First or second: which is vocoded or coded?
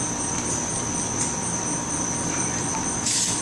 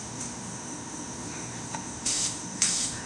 second